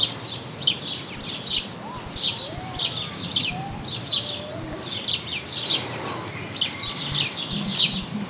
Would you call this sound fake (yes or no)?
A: yes